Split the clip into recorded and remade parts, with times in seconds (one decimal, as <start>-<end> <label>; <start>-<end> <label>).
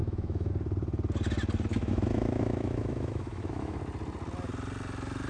0.0-0.5 remade; 0.5-1.7 recorded; 1.7-3.8 remade; 3.8-5.3 recorded